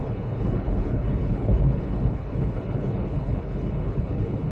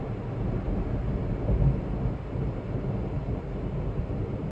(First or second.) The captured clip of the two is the second